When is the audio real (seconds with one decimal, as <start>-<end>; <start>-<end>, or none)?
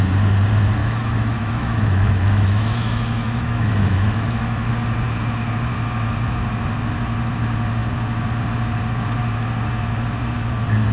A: 0.0-0.8; 4.7-10.9